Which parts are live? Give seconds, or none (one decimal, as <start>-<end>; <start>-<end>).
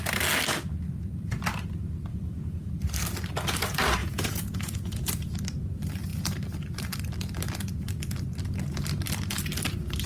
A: 0.0-2.1; 2.7-4.0; 5.0-10.1